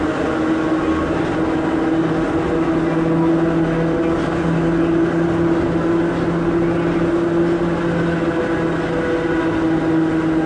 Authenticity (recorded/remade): recorded